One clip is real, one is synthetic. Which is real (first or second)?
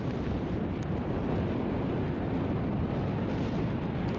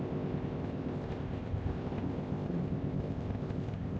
first